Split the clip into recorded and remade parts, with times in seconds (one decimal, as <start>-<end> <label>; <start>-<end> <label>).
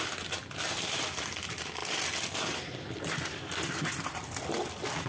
0.0-5.1 recorded